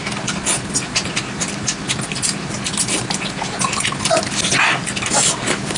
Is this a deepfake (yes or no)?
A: no